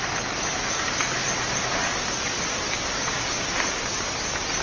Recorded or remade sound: recorded